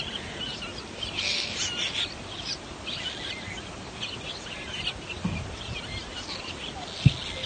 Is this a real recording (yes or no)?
yes